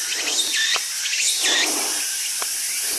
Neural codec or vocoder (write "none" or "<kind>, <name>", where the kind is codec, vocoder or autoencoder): none